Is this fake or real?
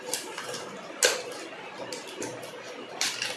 real